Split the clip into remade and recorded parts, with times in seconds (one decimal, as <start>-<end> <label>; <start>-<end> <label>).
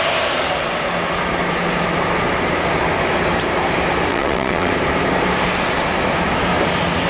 0.0-4.1 recorded; 4.1-4.7 remade; 4.7-7.1 recorded